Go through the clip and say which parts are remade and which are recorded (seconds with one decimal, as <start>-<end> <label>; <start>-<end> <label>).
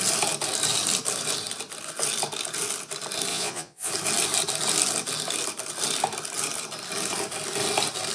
0.0-3.3 recorded; 3.3-3.9 remade; 3.9-8.1 recorded